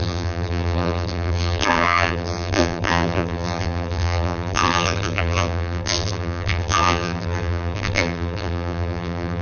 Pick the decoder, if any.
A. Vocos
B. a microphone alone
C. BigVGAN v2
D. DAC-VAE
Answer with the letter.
C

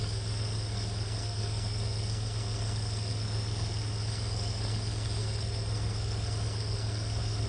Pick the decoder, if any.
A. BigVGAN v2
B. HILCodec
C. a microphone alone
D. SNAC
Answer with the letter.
D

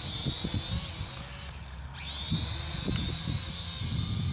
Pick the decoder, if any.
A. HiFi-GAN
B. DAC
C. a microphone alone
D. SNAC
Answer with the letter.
C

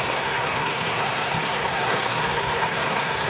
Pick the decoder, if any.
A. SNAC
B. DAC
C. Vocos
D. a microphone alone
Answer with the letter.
A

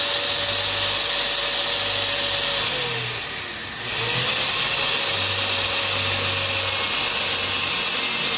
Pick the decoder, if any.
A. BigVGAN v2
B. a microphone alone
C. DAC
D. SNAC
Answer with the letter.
B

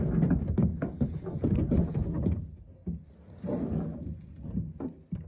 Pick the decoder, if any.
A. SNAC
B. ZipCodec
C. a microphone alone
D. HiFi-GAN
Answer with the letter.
C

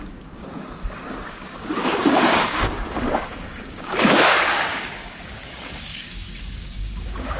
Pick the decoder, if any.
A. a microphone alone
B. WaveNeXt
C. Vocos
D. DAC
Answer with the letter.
D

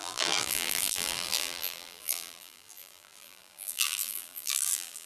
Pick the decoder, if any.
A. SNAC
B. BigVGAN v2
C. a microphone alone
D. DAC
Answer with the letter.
B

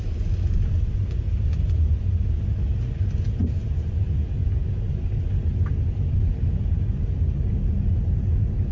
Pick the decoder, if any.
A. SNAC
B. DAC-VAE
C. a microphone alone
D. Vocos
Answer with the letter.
C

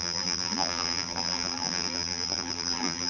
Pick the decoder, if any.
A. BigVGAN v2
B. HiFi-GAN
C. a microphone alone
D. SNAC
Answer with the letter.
A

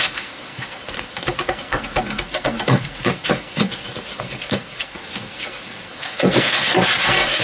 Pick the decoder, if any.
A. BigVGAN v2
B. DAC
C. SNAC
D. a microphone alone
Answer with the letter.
C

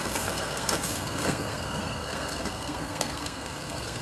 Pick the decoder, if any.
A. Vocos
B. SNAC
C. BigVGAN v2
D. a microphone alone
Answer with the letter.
B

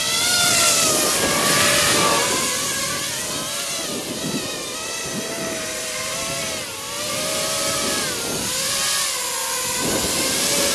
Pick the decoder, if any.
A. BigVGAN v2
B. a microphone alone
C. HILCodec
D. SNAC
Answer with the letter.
B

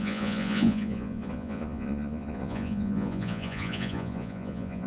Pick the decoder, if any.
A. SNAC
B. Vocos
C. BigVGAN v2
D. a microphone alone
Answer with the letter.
B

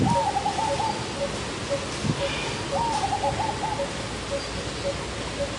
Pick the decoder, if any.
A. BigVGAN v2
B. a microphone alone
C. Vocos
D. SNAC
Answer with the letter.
B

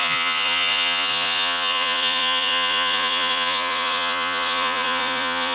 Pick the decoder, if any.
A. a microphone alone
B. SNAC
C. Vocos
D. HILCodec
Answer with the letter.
C